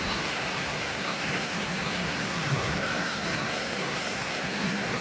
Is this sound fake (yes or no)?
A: yes